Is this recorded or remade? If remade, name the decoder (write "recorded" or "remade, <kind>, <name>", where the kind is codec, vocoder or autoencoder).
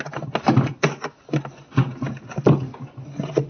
recorded